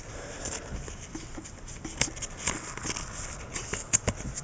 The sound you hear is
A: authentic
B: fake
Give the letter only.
A